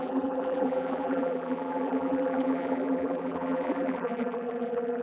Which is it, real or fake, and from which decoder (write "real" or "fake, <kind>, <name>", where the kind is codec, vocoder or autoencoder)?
fake, vocoder, BigVGAN v2